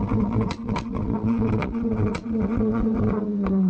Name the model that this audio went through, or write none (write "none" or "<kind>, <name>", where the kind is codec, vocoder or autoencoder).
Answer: vocoder, WaveNeXt